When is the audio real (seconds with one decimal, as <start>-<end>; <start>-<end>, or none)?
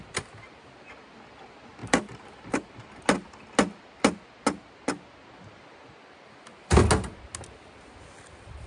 0.0-1.8; 3.0-8.7